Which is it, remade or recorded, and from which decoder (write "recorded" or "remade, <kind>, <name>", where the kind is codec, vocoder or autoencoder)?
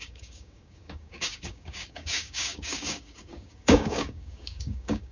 remade, codec, DAC